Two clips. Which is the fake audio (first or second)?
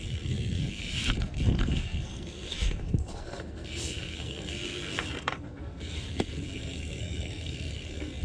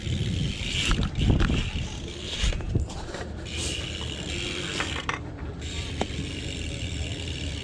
first